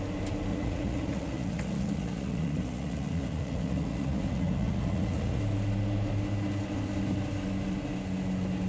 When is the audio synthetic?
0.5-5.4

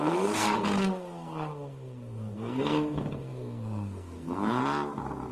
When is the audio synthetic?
0.0-4.6

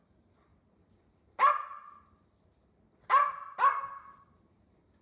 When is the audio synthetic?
none